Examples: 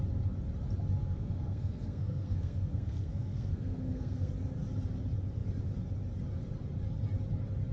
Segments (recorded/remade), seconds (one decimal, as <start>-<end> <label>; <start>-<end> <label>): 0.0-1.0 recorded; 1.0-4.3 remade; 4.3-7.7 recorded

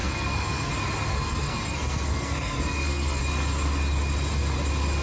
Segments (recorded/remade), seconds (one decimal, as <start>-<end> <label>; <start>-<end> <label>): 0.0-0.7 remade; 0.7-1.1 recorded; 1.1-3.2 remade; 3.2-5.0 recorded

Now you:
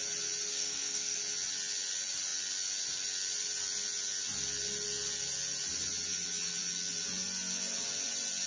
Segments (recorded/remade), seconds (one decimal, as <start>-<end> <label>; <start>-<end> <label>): 0.0-0.5 recorded; 0.5-1.2 remade; 1.2-8.5 recorded

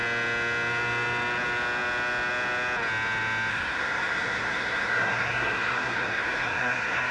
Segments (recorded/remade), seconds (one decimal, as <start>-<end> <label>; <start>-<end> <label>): 0.0-3.5 recorded; 3.5-7.1 remade

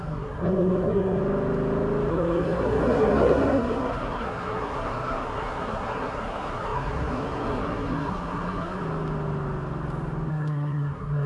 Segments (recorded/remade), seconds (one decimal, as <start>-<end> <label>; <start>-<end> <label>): 0.0-1.2 remade; 1.2-2.1 recorded; 2.1-8.8 remade; 8.8-10.3 recorded; 10.3-11.3 remade

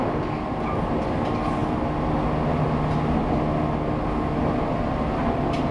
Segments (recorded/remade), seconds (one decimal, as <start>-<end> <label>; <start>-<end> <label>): 0.0-5.7 recorded